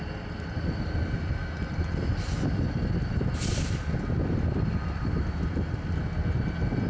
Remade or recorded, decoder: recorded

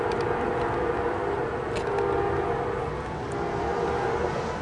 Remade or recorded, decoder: recorded